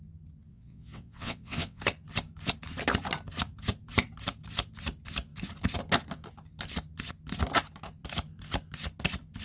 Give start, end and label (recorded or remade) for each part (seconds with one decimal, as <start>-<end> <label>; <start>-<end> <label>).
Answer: 0.0-0.5 recorded; 0.5-1.8 remade; 1.8-9.4 recorded